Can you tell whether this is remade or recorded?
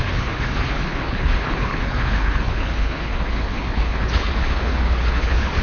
remade